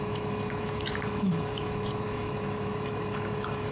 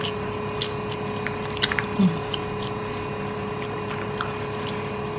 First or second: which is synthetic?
first